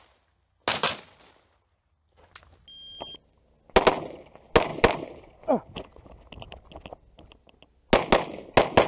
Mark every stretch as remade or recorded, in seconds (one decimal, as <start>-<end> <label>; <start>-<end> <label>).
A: 0.0-8.9 recorded